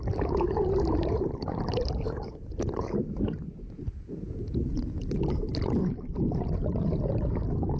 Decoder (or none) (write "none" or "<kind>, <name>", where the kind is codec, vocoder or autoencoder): none